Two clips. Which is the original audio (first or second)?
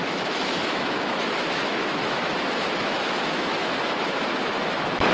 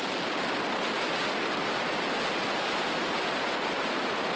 second